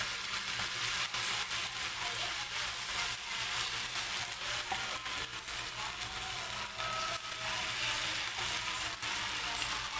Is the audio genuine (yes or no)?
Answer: yes